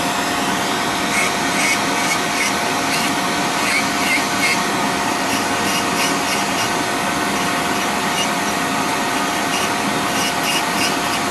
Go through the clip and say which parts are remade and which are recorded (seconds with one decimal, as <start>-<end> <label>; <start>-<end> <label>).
0.0-11.3 recorded